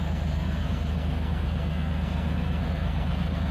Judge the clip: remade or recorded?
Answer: remade